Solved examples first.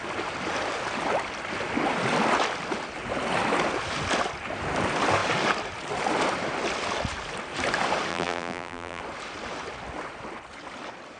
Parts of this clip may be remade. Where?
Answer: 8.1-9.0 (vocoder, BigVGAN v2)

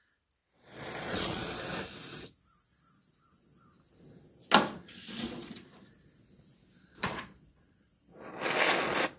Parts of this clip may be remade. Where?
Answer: 0.4-1.6 (vocoder, Vocos); 4.8-5.5; 6.8-7.9

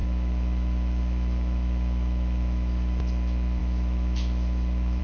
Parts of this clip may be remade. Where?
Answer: 0.0-3.0 (autoencoder, DAC-VAE); 3.6-5.0

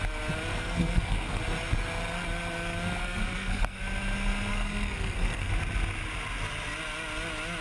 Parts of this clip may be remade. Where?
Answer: 0.5-1.4 (codec, SNAC); 3.0-3.8; 4.5-5.5

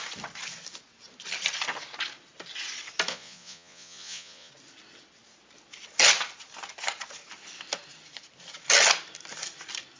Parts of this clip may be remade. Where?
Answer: 3.1-4.5 (vocoder, Vocos)

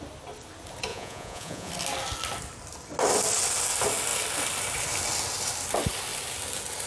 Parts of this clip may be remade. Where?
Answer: 0.9-1.7 (vocoder, Vocos)